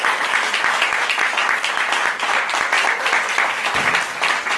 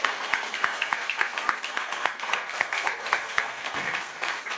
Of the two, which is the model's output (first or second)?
second